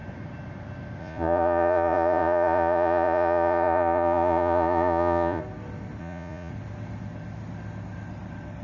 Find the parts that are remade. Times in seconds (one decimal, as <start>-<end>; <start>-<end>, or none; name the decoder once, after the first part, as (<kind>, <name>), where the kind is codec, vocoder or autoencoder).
1.0-5.4 (vocoder, Vocos); 6.0-6.5